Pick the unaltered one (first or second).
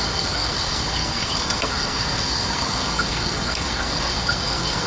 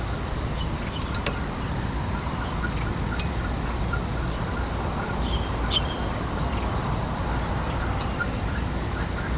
second